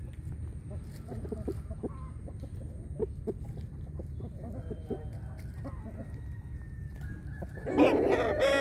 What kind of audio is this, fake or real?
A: real